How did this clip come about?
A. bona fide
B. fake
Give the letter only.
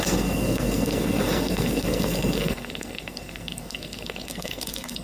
B